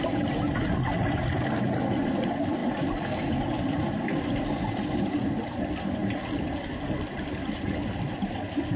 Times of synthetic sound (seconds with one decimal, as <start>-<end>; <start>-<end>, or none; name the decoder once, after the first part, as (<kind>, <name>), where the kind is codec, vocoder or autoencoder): none